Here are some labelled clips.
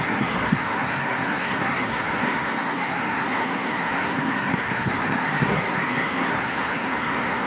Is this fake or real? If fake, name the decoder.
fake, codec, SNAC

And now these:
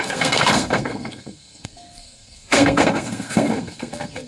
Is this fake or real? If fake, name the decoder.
fake, codec, SNAC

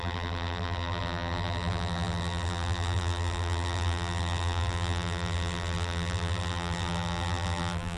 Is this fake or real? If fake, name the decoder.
fake, vocoder, BigVGAN v2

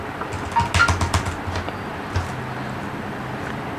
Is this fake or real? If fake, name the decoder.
real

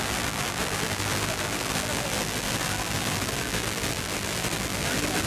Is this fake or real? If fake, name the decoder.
fake, vocoder, BigVGAN v2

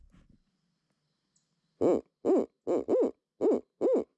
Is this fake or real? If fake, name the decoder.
real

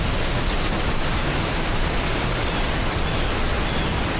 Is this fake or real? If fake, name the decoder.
real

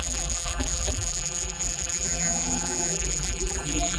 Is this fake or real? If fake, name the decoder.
fake, vocoder, BigVGAN v2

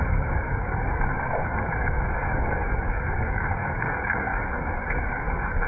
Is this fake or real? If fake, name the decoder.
fake, codec, DAC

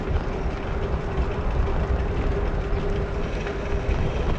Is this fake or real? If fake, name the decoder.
real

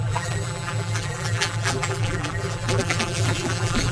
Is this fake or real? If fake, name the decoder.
fake, vocoder, BigVGAN v2